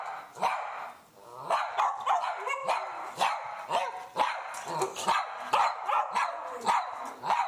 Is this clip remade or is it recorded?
recorded